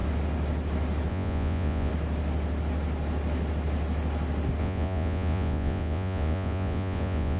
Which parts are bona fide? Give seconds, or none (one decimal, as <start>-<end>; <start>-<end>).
0.0-1.1; 1.9-4.6